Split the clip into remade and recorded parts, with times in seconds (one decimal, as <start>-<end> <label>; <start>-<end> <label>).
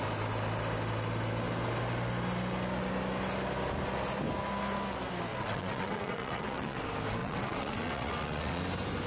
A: 0.0-5.3 recorded; 5.3-6.8 remade; 6.8-7.2 recorded; 7.2-8.6 remade; 8.6-9.1 recorded